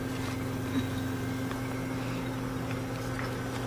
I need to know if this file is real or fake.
real